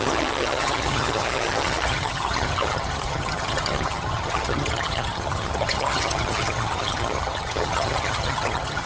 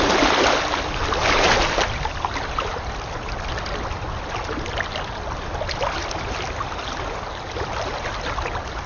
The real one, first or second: second